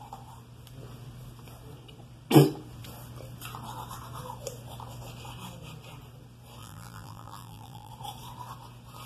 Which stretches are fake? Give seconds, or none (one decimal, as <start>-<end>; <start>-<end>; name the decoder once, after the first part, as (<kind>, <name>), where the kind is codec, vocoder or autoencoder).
6.6-7.9 (vocoder, BigVGAN v2)